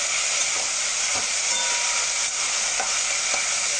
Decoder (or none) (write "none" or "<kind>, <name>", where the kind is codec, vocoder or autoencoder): none